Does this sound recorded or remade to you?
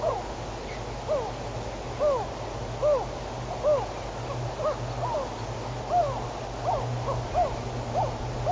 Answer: recorded